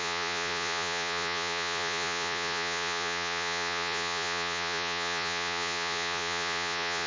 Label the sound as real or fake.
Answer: fake